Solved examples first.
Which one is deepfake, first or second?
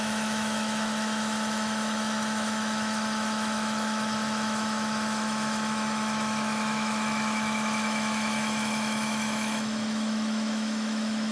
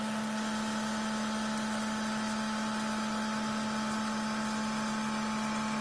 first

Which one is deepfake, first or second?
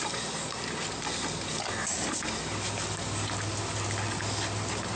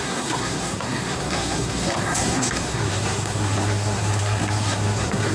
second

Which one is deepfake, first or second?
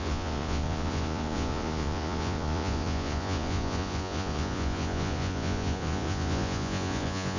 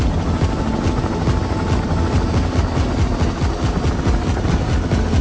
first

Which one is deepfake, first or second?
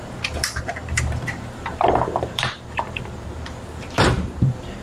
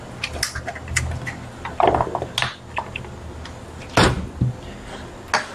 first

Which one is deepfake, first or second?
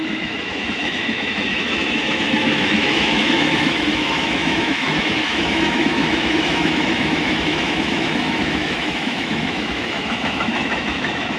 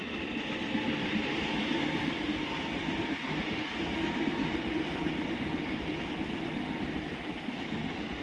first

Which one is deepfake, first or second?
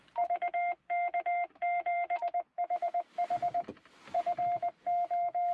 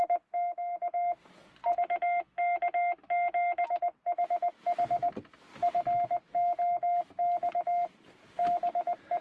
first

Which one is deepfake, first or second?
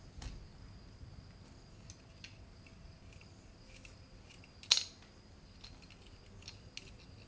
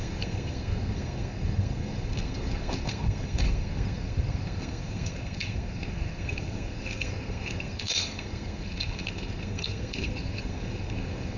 second